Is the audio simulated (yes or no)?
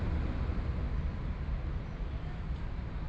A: no